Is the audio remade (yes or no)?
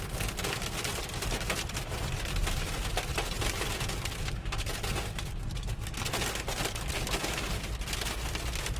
no